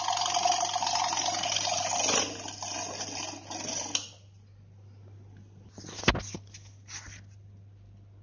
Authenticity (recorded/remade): recorded